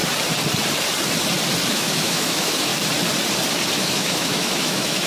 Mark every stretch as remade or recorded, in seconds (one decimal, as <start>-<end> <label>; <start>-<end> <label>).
0.0-1.7 recorded; 1.7-2.7 remade; 2.7-3.8 recorded; 3.8-5.1 remade